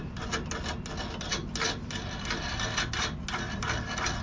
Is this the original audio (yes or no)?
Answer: yes